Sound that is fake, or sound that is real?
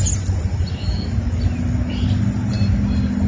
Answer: real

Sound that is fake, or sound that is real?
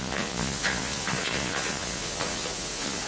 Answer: fake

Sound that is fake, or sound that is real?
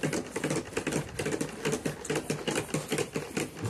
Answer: real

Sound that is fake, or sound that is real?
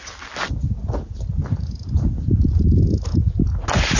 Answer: real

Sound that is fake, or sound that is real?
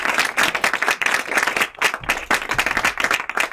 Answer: real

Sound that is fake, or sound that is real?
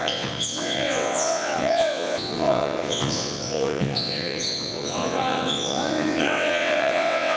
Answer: fake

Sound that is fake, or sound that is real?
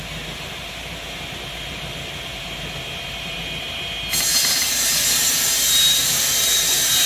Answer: fake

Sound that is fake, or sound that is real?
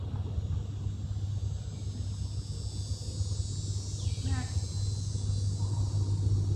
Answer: real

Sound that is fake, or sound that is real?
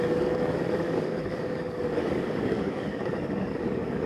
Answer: fake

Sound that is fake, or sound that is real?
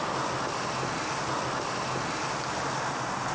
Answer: real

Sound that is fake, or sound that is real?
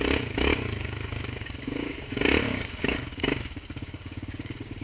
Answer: fake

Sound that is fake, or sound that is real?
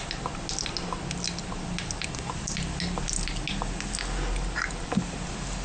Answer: real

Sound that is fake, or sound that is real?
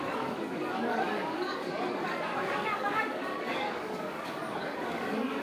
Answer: fake